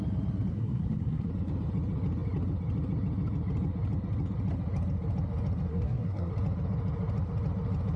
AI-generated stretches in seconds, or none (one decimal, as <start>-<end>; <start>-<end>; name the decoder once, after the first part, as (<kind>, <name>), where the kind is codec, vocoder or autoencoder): 0.5-1.3 (codec, SNAC); 5.7-6.3